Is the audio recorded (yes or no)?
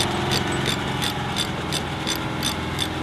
yes